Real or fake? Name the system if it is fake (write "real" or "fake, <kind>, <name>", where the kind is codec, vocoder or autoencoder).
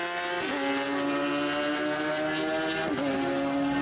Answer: real